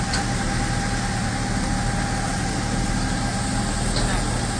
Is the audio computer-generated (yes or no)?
no